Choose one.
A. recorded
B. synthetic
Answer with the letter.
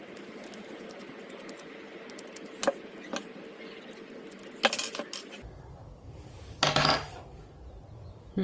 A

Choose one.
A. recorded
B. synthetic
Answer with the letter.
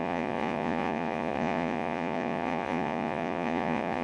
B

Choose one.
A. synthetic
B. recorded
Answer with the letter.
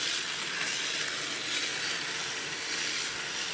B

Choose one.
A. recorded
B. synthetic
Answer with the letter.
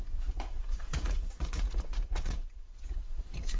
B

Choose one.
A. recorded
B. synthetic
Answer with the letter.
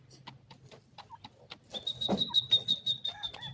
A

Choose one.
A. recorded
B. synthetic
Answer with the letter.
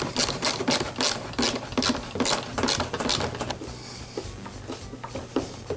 A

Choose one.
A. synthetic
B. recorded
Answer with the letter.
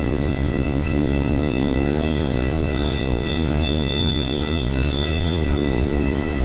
A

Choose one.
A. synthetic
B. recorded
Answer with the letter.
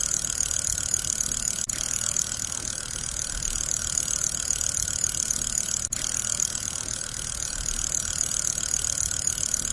B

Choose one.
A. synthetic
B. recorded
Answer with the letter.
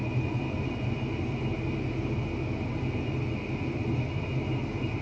B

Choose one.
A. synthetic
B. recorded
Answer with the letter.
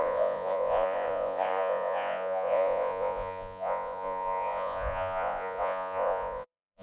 A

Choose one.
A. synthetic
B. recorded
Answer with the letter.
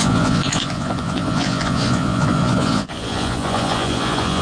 A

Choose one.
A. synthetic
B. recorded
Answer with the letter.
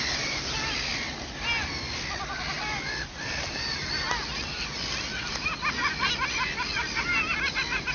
B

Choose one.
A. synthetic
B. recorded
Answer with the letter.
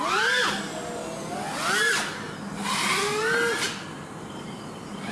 B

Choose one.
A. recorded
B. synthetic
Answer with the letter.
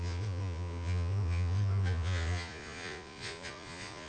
B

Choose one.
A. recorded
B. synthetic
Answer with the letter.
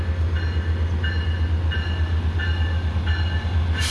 A